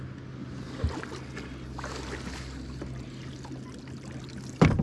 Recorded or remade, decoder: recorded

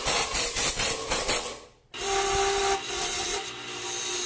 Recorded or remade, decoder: recorded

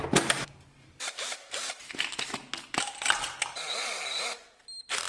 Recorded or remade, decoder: recorded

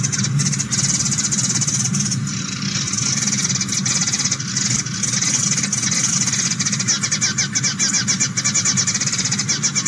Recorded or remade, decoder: recorded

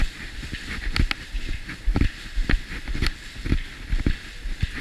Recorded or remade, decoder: recorded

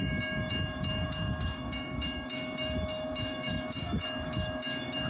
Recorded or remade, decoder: remade, autoencoder, DAC-VAE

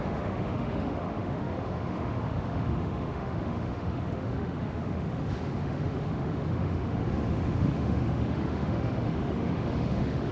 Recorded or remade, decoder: remade, autoencoder, DAC-VAE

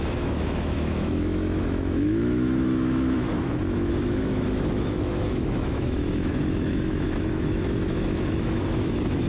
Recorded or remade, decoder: remade, autoencoder, DAC-VAE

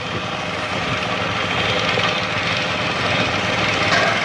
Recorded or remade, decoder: recorded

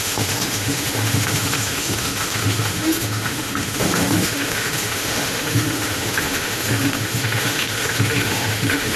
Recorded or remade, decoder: remade, autoencoder, DAC-VAE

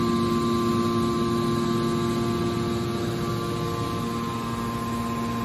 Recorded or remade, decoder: recorded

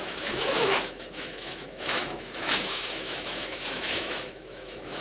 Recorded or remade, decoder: remade, autoencoder, DAC-VAE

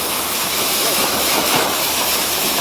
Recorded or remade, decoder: remade, autoencoder, DAC-VAE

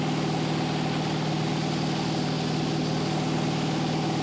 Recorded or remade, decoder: recorded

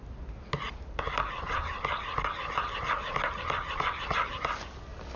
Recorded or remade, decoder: recorded